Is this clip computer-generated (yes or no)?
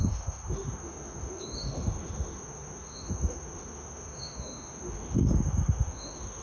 yes